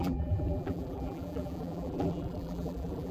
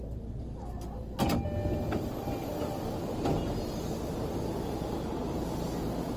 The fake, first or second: first